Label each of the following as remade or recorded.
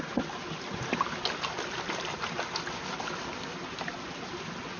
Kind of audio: recorded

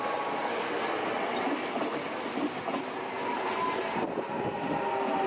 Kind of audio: recorded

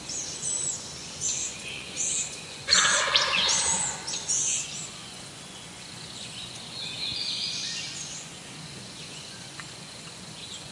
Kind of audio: remade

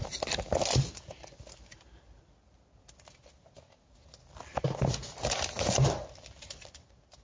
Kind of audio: recorded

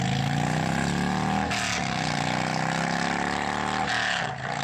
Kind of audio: recorded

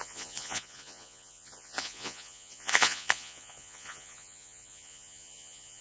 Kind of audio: remade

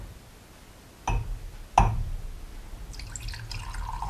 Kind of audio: recorded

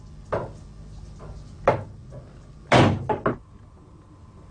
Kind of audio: recorded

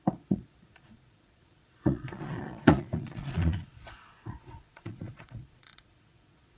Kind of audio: remade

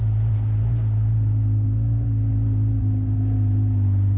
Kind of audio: recorded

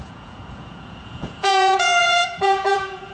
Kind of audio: remade